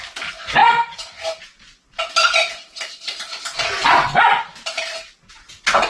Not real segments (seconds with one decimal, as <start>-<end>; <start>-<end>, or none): none